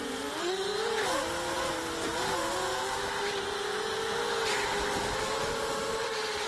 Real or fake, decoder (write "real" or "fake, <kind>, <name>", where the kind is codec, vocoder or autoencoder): real